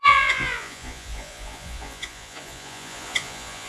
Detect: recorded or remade remade